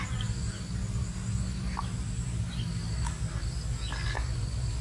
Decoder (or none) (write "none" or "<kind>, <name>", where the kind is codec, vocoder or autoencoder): none